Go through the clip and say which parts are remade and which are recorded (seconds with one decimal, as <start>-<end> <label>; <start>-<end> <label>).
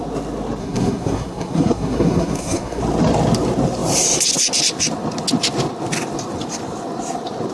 0.0-0.6 recorded; 0.6-2.8 remade; 2.8-7.5 recorded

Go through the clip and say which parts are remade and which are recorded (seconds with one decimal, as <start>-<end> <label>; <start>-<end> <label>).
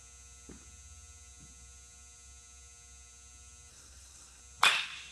0.0-3.7 recorded; 3.7-4.4 remade; 4.4-5.1 recorded